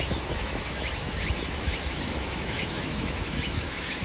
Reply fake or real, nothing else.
fake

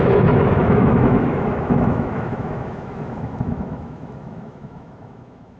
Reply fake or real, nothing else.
fake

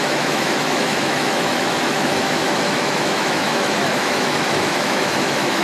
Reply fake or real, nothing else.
fake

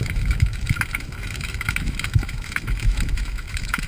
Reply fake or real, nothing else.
fake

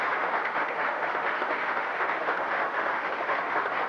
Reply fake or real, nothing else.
fake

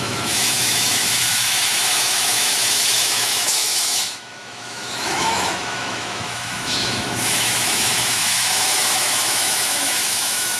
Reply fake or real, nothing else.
fake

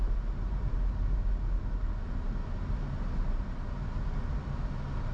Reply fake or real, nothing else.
real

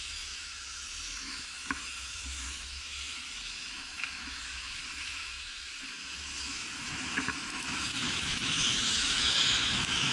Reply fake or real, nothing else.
fake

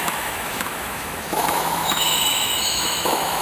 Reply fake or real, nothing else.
fake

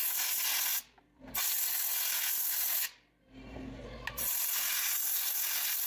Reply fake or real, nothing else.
real